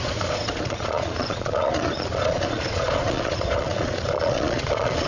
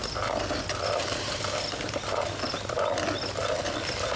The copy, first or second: first